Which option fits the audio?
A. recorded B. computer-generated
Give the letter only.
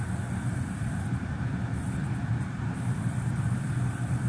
B